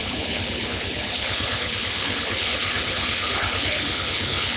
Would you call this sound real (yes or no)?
no